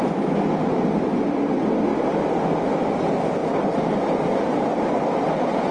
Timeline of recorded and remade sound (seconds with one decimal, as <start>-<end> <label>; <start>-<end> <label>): 0.0-3.4 recorded; 3.4-4.3 remade; 4.3-5.7 recorded